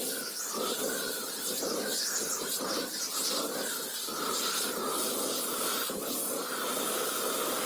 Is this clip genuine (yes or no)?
yes